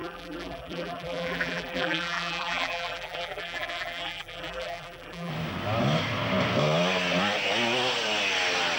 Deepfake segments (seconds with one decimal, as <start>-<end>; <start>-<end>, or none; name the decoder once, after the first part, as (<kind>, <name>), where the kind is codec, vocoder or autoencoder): 0.0-5.3 (vocoder, BigVGAN v2)